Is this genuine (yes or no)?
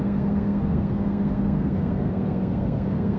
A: no